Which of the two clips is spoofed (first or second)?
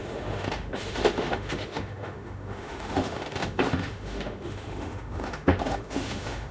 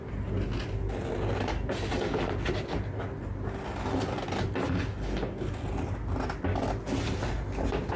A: first